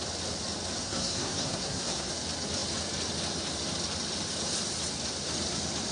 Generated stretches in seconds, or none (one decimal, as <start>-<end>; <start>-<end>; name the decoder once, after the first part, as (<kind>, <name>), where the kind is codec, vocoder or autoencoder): 0.8-2.1 (codec, SNAC)